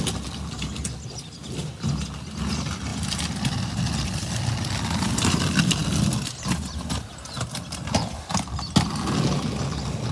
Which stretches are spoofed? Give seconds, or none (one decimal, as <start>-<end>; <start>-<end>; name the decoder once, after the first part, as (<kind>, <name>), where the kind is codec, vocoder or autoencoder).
2.9-3.7 (vocoder, BigVGAN v2)